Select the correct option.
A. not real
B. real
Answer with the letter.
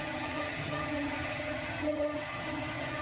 A